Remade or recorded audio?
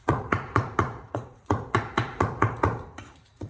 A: remade